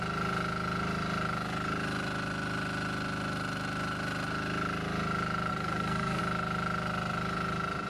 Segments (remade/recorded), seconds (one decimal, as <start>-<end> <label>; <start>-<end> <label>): 0.0-5.5 recorded; 5.5-6.2 remade; 6.2-7.9 recorded